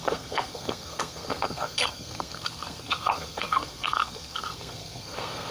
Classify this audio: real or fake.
fake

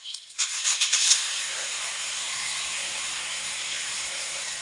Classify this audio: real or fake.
fake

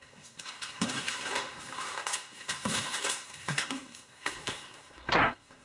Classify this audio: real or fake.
fake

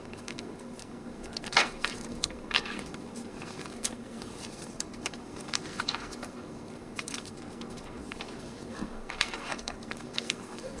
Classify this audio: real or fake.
fake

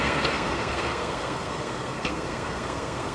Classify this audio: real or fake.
fake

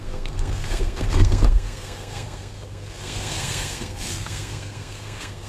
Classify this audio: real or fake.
fake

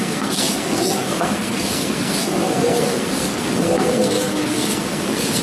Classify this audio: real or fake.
fake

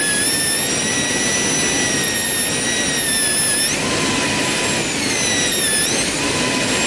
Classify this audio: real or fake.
real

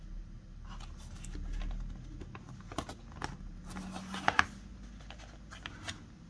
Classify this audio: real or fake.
real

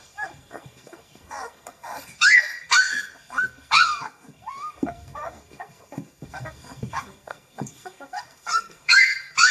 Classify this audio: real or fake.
fake